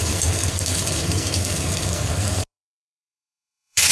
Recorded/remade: remade